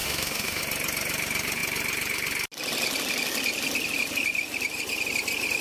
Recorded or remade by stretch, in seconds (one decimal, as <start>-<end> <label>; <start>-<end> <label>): 0.0-0.6 remade; 0.6-5.6 recorded